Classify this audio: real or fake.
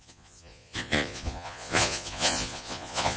fake